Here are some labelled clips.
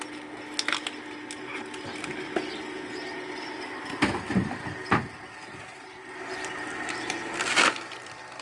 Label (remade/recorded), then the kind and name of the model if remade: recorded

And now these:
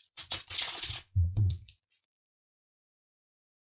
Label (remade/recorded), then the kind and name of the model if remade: remade, vocoder, Vocos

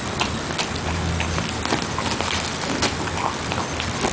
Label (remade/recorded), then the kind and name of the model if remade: recorded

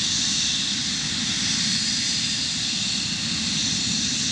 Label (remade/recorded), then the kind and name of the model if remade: recorded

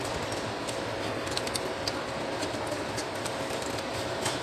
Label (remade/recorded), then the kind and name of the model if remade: recorded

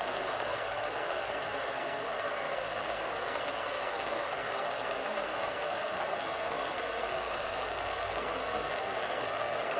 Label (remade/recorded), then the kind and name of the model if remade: remade, codec, SNAC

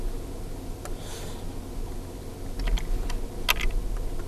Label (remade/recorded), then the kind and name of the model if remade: recorded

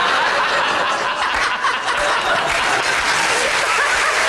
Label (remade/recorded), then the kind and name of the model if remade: recorded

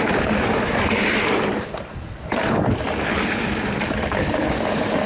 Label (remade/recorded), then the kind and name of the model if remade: remade, vocoder, BigVGAN v2